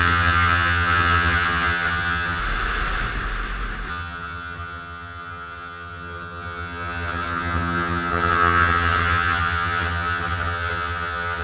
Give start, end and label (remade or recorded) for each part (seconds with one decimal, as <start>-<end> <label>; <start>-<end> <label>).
0.0-2.4 remade; 2.4-3.9 recorded; 3.9-11.4 remade